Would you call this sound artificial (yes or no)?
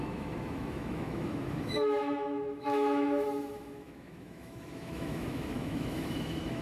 yes